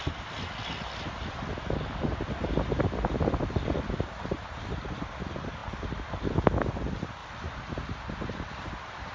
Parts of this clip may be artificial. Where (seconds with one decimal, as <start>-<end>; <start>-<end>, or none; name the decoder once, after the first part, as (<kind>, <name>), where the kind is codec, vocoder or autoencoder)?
none